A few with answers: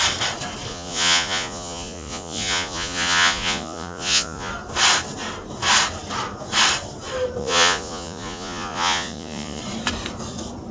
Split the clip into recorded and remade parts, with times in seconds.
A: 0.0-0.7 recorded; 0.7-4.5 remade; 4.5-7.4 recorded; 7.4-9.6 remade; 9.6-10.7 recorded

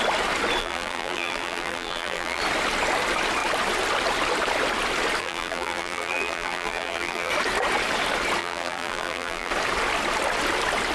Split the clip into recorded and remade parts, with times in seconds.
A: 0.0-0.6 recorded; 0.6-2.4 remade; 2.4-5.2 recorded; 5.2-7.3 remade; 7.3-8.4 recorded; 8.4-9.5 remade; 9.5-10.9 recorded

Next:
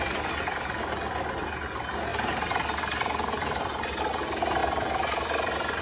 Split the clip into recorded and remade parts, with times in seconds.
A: 0.0-2.1 recorded; 2.1-4.0 remade; 4.0-5.8 recorded